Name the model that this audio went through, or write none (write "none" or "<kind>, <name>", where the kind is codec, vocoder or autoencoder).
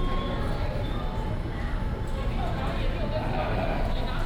none